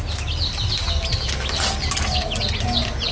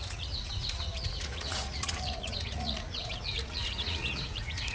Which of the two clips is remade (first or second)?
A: second